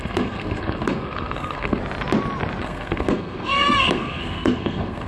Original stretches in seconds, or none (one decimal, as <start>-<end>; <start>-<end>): 1.8-2.6